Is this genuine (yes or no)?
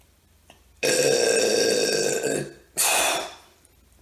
yes